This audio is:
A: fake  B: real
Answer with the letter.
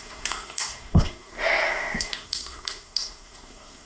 A